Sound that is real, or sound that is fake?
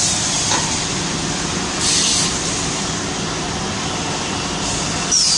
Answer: real